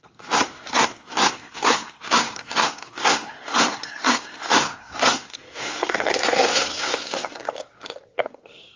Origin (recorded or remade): remade